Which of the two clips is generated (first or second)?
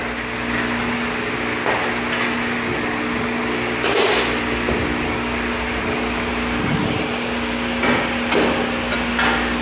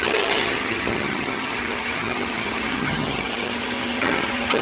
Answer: second